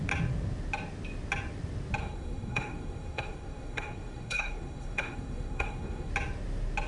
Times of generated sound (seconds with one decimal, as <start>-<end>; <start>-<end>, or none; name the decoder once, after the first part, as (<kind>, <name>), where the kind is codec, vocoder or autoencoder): 2.0-6.1 (codec, SNAC)